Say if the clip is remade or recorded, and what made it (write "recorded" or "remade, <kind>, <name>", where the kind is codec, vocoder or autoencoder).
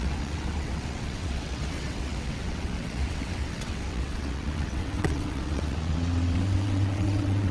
remade, vocoder, WaveNeXt